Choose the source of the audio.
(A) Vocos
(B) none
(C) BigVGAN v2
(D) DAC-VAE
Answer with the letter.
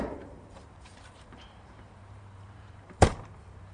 C